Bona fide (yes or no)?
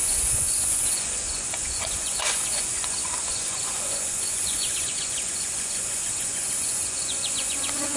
no